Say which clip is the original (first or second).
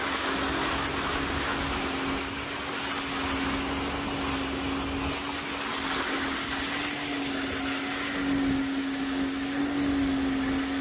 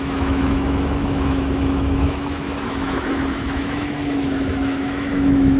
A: first